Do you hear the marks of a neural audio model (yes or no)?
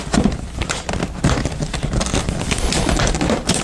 yes